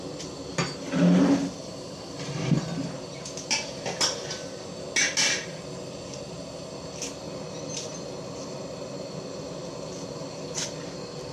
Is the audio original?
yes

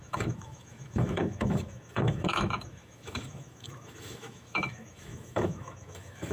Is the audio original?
no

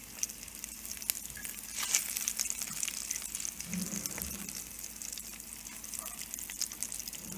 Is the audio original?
yes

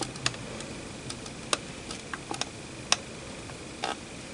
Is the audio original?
yes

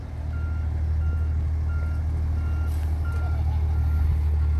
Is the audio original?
yes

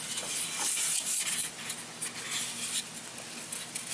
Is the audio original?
yes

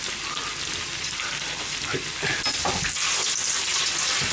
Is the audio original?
yes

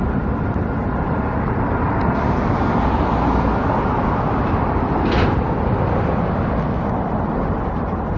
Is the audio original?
yes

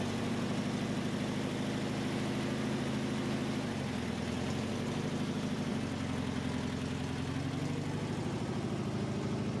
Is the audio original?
yes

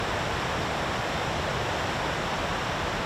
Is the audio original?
yes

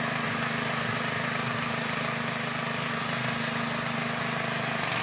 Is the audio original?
yes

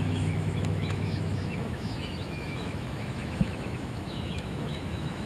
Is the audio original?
no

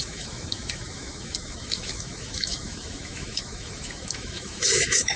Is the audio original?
no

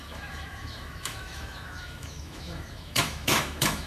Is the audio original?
no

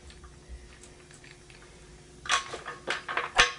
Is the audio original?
yes